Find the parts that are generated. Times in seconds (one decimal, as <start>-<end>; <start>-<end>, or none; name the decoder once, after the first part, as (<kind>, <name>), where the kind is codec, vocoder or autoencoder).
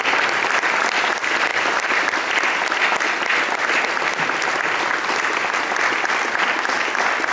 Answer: none